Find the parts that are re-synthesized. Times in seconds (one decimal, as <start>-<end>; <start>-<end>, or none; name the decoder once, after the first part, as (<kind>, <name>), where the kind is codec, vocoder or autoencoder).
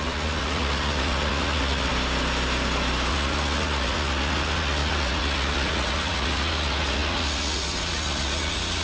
0.0-1.9 (vocoder, Vocos); 3.1-8.8